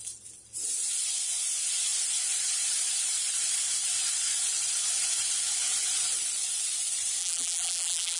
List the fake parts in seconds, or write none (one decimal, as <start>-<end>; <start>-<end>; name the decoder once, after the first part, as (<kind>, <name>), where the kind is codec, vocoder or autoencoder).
7.2-8.2 (vocoder, BigVGAN v2)